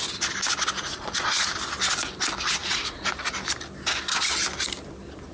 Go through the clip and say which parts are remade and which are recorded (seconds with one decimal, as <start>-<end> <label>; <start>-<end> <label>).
0.0-0.8 recorded; 0.8-1.6 remade; 1.6-2.6 recorded; 2.6-3.3 remade; 3.3-5.3 recorded